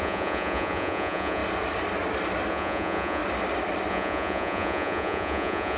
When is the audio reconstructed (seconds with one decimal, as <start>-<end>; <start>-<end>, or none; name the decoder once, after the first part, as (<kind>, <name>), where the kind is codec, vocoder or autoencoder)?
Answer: 0.0-1.4 (vocoder, Vocos); 2.5-3.2; 3.9-5.8